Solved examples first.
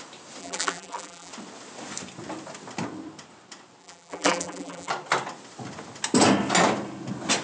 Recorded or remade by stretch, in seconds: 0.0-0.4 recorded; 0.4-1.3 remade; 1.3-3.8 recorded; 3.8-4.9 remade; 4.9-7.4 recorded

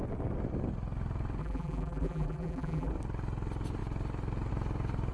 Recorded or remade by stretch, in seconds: 0.0-1.4 recorded; 1.4-2.9 remade; 2.9-5.1 recorded

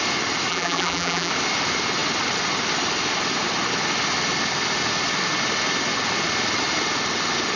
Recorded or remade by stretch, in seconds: 0.0-0.5 recorded; 0.5-1.3 remade; 1.3-7.6 recorded